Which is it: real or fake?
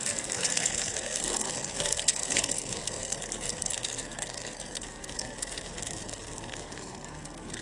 fake